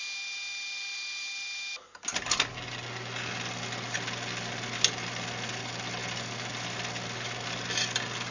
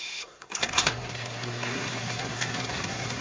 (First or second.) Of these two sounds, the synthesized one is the second